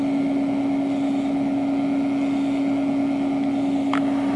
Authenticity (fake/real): real